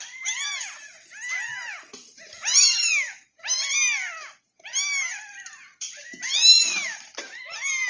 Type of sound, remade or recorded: recorded